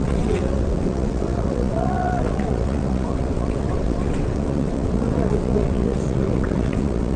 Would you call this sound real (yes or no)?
no